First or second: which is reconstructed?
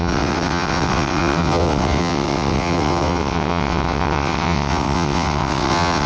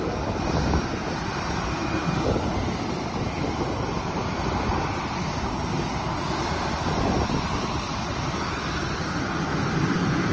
first